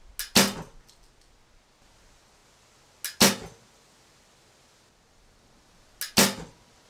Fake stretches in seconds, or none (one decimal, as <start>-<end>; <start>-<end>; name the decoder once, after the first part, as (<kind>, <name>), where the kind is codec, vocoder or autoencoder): none